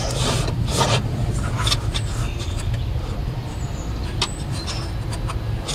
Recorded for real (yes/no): yes